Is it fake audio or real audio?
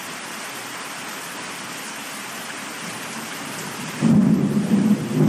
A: real